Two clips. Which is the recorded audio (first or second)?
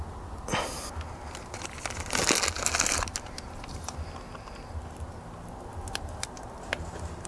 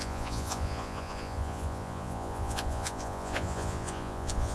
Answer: first